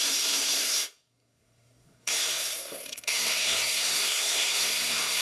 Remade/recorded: remade